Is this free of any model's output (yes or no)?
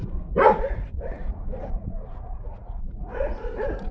no